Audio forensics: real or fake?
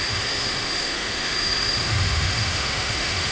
fake